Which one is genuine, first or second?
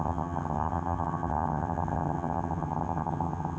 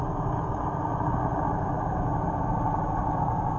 second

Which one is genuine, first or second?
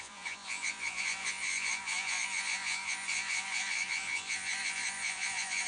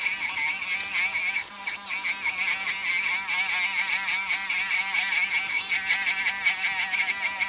second